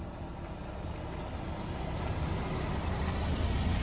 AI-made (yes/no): no